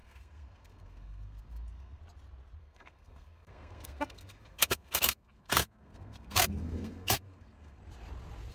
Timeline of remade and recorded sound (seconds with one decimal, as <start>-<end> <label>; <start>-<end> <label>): 0.0-2.0 remade; 2.0-2.6 recorded; 2.6-7.8 remade; 7.8-8.5 recorded